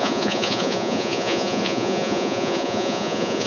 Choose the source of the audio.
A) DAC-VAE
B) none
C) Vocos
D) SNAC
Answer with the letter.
C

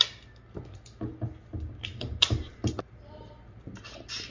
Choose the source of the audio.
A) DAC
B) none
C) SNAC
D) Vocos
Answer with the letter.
B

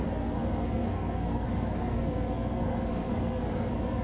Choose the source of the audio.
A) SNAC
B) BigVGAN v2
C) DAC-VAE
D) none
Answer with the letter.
A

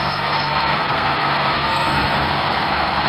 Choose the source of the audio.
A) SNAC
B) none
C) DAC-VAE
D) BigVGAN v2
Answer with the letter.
A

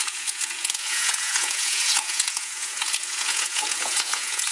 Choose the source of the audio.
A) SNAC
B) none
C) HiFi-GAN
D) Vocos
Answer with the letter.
D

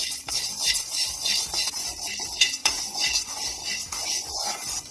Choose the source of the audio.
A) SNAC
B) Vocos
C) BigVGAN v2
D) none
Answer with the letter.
B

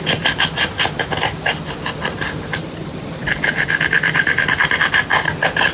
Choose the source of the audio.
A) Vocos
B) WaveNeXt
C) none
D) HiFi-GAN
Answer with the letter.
C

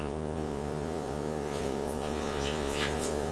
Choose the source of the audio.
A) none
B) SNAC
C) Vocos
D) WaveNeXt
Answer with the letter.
C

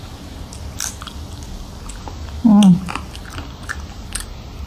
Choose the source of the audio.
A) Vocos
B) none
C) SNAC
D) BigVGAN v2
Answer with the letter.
B